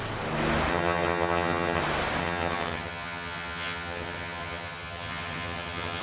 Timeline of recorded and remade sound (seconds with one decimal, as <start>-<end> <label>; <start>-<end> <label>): 0.0-0.7 recorded; 0.7-1.8 remade; 1.8-2.2 recorded; 2.2-6.0 remade

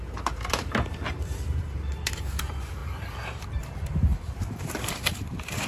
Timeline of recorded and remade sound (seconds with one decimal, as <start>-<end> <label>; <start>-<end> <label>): 0.0-5.7 remade

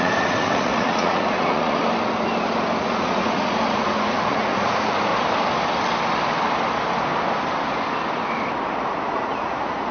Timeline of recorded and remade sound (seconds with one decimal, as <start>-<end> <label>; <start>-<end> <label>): 0.0-1.8 remade; 1.8-2.8 recorded; 2.8-5.1 remade; 5.1-8.8 recorded; 8.8-9.9 remade

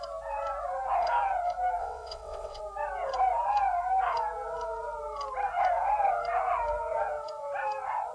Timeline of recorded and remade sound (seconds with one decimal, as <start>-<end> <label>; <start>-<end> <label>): 0.0-1.8 recorded; 1.8-2.6 remade; 2.6-8.1 recorded

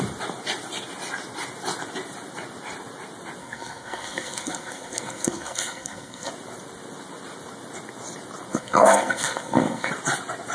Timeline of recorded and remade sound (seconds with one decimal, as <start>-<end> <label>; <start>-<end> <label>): 0.0-3.4 recorded; 3.4-6.3 remade; 6.3-8.5 recorded; 8.5-9.9 remade; 9.9-10.5 recorded

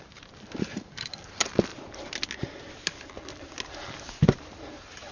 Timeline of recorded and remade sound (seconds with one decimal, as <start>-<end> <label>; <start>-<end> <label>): 0.0-1.7 remade; 1.7-4.1 recorded; 4.1-5.1 remade

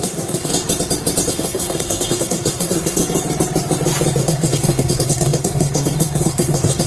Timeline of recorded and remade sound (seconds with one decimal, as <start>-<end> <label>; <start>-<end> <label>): 0.0-0.5 remade; 0.5-1.3 recorded; 1.3-3.0 remade; 3.0-4.2 recorded; 4.2-6.9 remade